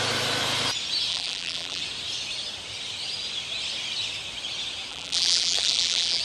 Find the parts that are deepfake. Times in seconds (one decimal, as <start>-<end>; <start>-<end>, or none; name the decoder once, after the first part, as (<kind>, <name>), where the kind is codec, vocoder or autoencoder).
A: 1.1-1.8 (vocoder, BigVGAN v2); 4.9-6.2